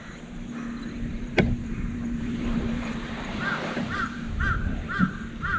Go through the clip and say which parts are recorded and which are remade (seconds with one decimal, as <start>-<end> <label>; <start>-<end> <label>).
0.0-1.1 recorded; 1.1-4.4 remade; 4.4-5.6 recorded